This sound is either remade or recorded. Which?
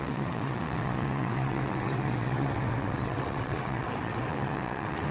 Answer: remade